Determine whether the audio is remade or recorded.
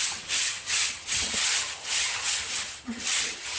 remade